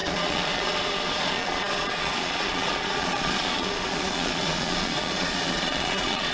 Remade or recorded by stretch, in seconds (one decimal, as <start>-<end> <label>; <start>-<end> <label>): 0.0-6.3 remade